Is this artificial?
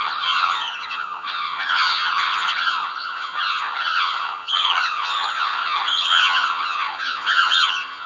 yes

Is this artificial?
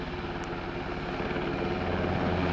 no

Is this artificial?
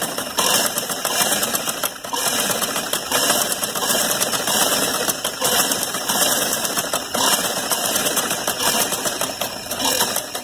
yes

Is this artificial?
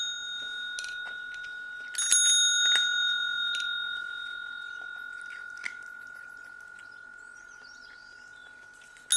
no